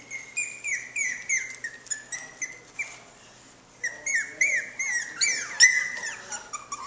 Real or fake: real